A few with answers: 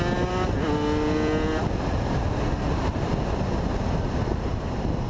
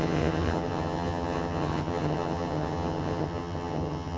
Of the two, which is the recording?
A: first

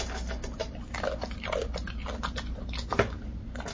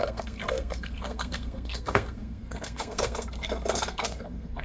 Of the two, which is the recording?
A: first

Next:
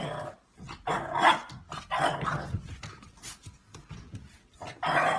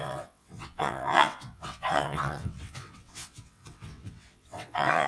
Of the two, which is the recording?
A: first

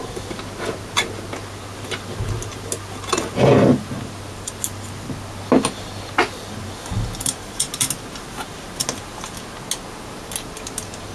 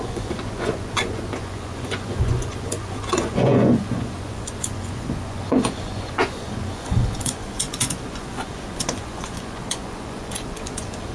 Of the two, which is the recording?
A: first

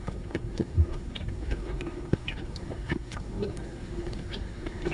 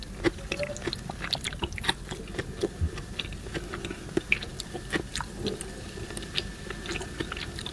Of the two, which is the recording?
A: second